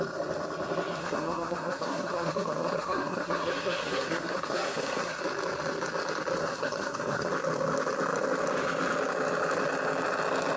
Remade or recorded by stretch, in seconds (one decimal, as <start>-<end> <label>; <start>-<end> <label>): 0.0-1.0 recorded; 1.0-5.2 remade; 5.2-6.4 recorded; 6.4-7.3 remade; 7.3-10.6 recorded